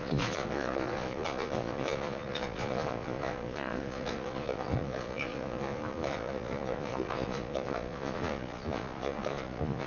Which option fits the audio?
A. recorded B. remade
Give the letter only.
B